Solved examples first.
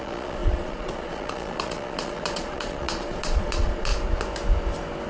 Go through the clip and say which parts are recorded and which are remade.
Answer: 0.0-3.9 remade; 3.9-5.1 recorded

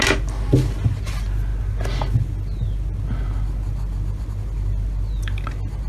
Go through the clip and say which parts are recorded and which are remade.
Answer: 0.0-5.9 recorded

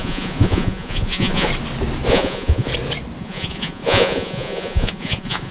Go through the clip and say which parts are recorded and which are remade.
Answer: 0.0-1.5 remade; 1.5-2.1 recorded; 2.1-2.7 remade; 2.7-3.2 recorded; 3.2-5.5 remade

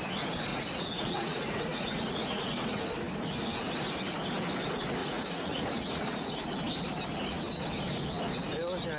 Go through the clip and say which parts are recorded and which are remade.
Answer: 0.0-0.5 recorded; 0.5-2.8 remade; 2.8-5.0 recorded; 5.0-6.4 remade; 6.4-9.0 recorded

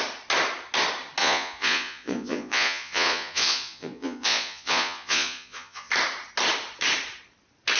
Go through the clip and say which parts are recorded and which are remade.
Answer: 0.0-1.2 recorded; 1.2-5.9 remade; 5.9-7.8 recorded

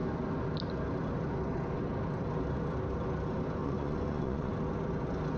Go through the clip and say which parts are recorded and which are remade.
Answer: 0.0-3.6 recorded; 3.6-4.5 remade; 4.5-5.4 recorded

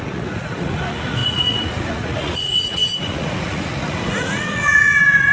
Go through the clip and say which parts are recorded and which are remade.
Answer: 0.0-5.3 remade

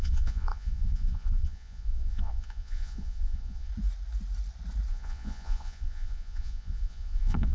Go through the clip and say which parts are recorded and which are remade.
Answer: 0.0-3.7 remade; 3.7-4.9 recorded; 4.9-7.5 remade